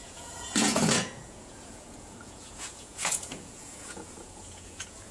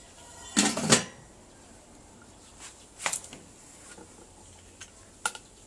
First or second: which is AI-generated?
first